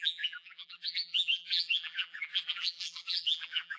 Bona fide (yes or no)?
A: no